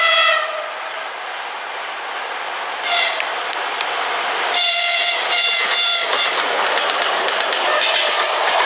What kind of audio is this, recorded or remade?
recorded